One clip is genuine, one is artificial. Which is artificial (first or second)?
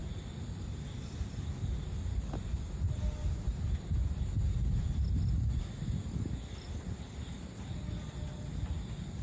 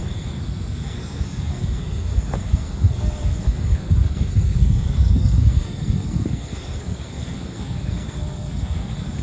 second